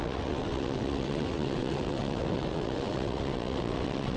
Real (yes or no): no